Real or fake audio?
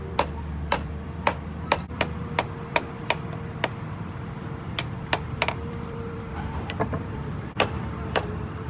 fake